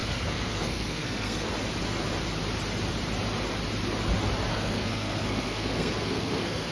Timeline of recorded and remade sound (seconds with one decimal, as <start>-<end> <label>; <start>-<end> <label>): 0.0-1.5 remade; 1.5-4.5 recorded; 4.5-6.7 remade